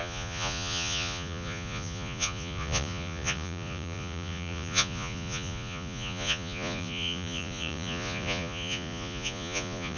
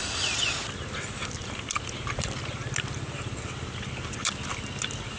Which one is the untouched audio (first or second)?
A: second